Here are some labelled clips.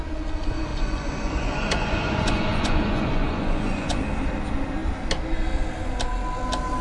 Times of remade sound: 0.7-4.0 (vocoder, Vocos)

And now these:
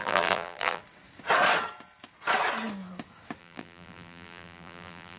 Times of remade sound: 0.0-0.8 (vocoder, BigVGAN v2); 3.4-5.2

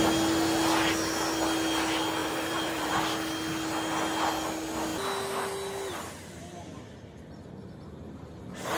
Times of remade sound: 2.2-2.9 (vocoder, BigVGAN v2)

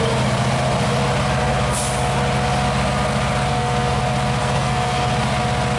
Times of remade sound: 3.5-4.0 (codec, SNAC); 4.4-5.1

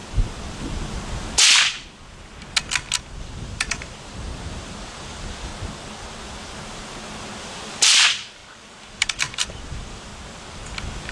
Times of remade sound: 3.2-5.5 (vocoder, BigVGAN v2); 7.4-10.1

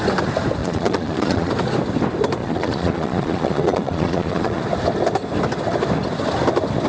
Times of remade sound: 0.6-1.5 (vocoder, Vocos); 2.4-4.6

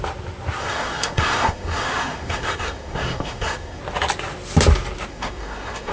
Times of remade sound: 0.6-3.8 (codec, SNAC); 5.1-5.9